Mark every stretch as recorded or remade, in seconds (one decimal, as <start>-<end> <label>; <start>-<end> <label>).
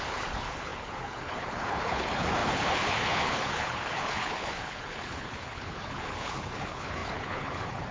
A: 0.0-7.9 remade